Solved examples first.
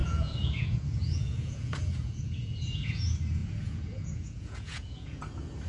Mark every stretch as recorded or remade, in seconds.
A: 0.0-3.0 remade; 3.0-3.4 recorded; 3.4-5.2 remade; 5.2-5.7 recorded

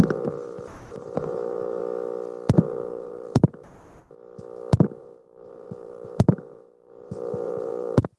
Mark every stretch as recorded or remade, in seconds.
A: 0.0-1.8 remade; 1.8-2.6 recorded; 2.6-4.0 remade; 4.0-5.0 recorded; 5.0-8.2 remade